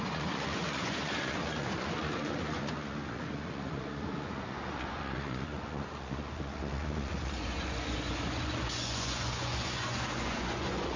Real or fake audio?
fake